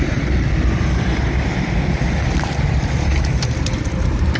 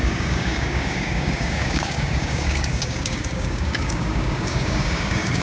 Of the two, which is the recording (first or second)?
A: first